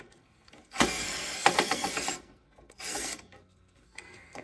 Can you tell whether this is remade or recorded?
remade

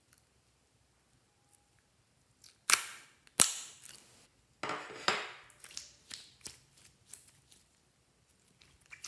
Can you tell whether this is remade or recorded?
recorded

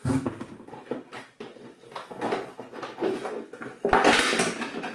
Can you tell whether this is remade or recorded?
recorded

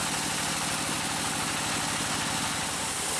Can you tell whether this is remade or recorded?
recorded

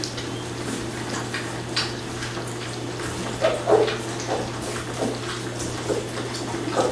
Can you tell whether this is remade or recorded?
recorded